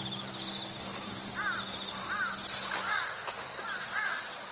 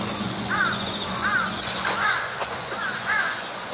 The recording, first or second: first